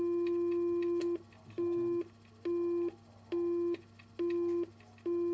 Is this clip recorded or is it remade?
recorded